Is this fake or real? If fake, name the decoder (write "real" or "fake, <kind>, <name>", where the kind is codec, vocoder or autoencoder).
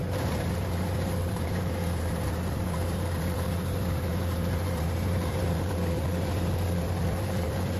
fake, vocoder, BigVGAN v2